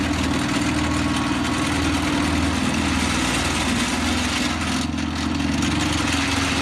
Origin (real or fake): real